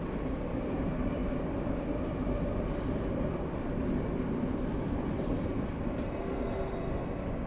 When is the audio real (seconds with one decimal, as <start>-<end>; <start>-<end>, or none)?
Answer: 0.0-7.5